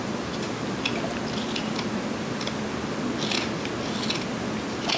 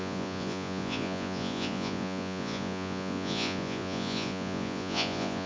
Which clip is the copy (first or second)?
second